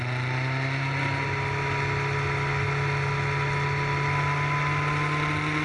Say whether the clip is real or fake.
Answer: real